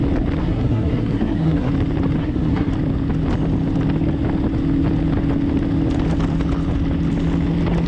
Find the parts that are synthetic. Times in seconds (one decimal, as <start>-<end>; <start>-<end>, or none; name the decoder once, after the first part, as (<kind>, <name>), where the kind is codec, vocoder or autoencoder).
0.4-1.7 (codec, SNAC); 2.2-2.7